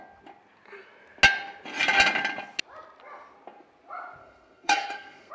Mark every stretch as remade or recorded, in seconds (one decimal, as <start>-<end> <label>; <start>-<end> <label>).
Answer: 0.0-4.2 recorded; 4.2-5.3 remade